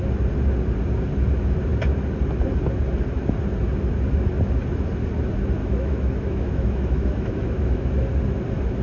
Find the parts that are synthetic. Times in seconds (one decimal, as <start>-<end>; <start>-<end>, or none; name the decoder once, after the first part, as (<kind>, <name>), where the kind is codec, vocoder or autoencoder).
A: 5.6-7.9 (autoencoder, DAC-VAE)